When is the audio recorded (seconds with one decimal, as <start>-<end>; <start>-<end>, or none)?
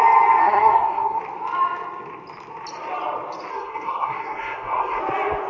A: 0.0-0.4; 1.2-3.5; 5.0-5.5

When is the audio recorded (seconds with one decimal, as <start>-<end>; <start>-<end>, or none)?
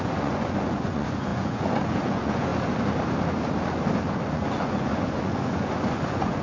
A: 2.5-4.3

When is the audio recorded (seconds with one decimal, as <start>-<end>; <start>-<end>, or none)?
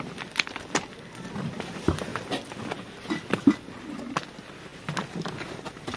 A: 0.0-6.0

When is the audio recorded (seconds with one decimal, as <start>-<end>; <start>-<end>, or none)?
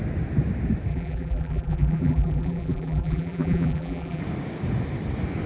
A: 0.0-0.9; 4.2-5.5